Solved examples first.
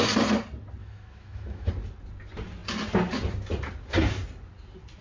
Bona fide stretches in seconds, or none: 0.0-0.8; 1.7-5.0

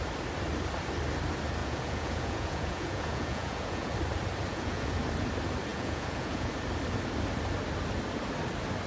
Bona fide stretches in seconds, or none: 0.0-1.6; 3.9-4.5; 5.0-5.7; 6.5-8.9

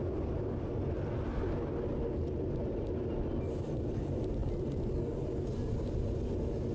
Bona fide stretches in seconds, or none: 0.0-6.7

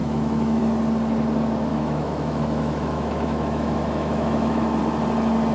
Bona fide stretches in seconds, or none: 0.6-1.7; 4.8-5.5

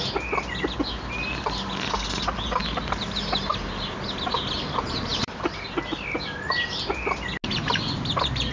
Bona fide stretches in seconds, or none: 0.0-5.1; 7.1-8.5